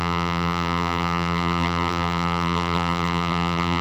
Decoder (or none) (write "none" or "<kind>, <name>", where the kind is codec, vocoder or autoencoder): vocoder, BigVGAN v2